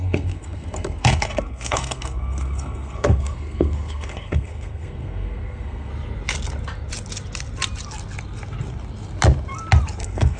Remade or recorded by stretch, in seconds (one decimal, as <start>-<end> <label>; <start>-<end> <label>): 0.0-5.9 remade; 5.9-10.0 recorded; 10.0-10.4 remade